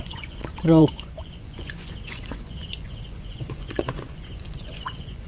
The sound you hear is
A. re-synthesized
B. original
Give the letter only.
A